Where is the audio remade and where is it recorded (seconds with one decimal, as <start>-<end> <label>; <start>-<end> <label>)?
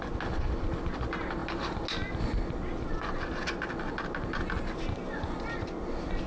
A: 0.0-6.3 recorded